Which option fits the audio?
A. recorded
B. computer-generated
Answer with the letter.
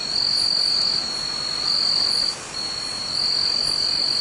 A